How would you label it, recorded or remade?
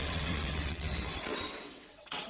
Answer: remade